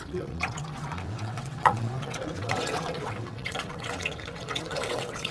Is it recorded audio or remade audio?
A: remade